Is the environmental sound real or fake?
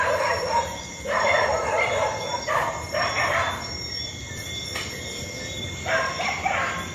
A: fake